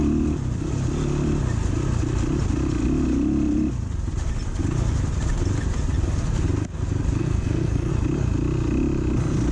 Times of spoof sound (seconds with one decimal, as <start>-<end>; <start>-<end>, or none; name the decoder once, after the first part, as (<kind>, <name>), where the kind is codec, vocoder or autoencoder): 7.2-7.9 (codec, SNAC)